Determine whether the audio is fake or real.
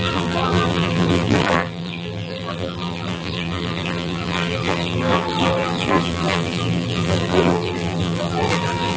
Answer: fake